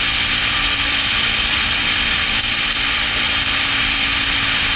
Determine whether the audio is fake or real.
fake